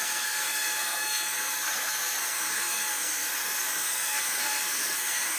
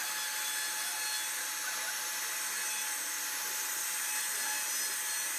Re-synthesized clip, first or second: first